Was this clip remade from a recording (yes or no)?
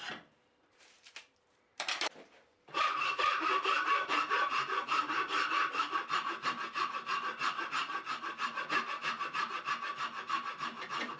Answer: yes